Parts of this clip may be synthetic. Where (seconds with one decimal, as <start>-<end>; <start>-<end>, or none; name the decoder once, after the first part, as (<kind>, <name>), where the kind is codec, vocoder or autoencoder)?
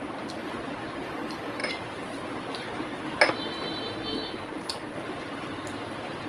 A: none